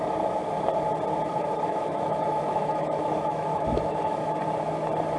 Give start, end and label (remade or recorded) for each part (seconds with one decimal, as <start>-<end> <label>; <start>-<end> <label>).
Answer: 0.0-1.3 recorded; 1.3-4.4 remade; 4.4-5.2 recorded